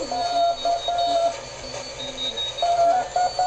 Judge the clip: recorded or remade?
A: recorded